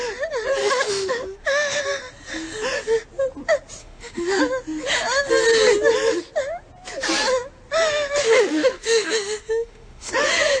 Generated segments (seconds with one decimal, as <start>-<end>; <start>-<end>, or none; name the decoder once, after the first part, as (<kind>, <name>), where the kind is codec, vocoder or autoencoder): 0.6-1.8 (autoencoder, DAC-VAE); 3.8-4.4; 8.2-10.1